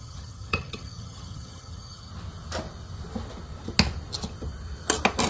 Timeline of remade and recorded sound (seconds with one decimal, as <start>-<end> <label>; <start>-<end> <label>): 0.0-2.1 remade; 2.1-5.3 recorded